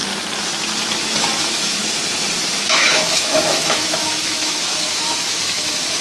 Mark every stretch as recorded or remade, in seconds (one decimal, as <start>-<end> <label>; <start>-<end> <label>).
0.0-1.4 recorded; 1.4-1.8 remade; 1.8-2.6 recorded; 2.6-6.0 remade